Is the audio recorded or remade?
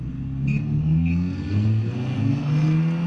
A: remade